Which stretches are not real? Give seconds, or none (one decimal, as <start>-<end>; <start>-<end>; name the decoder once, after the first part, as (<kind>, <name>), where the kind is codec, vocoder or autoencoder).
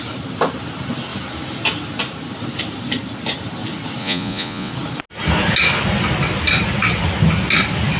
4.0-4.7 (vocoder, Vocos)